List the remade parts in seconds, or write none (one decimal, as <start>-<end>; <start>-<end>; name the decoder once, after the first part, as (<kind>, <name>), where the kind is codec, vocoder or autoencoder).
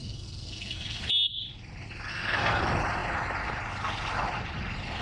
0.0-1.0 (codec, SNAC); 2.1-2.6